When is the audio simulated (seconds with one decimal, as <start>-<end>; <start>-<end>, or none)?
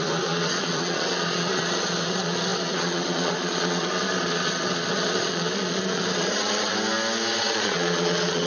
0.0-6.7; 7.4-8.5